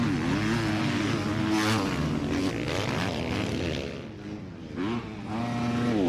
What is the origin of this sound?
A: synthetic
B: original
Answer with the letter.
B